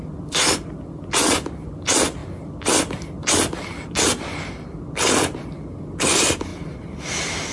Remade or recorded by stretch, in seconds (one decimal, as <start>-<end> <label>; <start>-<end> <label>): 0.0-7.5 recorded